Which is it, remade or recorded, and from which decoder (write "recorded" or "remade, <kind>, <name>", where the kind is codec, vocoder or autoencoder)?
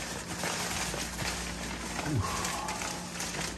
recorded